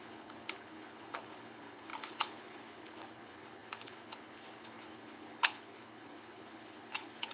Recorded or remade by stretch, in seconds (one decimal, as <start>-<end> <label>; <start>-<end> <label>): 0.0-7.3 remade